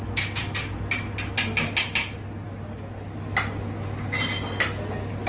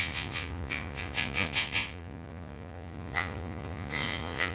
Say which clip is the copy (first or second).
second